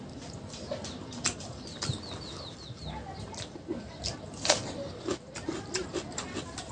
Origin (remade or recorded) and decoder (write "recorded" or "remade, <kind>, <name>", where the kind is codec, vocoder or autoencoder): recorded